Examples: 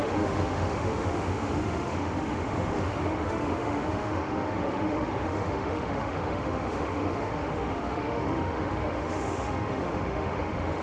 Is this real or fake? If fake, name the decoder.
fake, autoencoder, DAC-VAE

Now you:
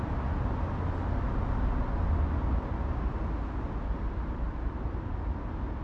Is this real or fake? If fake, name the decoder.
real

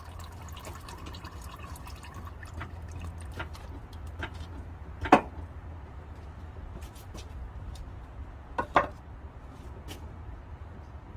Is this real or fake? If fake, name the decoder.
real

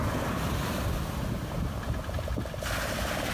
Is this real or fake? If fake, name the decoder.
real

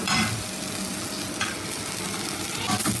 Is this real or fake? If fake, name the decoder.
real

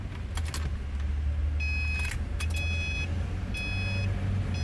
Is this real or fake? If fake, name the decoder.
real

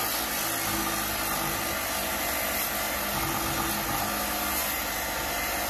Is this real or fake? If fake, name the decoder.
real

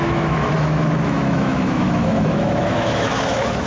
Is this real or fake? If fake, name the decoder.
fake, autoencoder, DAC-VAE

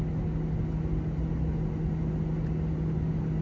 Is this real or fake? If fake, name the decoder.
real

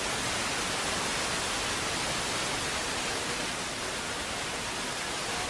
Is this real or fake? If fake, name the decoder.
real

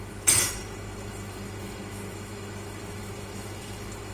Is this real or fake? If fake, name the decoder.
fake, autoencoder, DAC-VAE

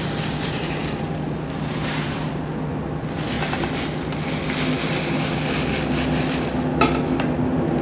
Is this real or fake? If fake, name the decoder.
real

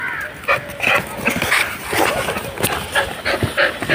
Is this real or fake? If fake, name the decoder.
real